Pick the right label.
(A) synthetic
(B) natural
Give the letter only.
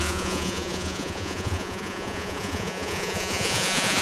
A